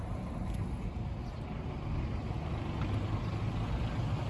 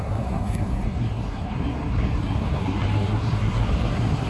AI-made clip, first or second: second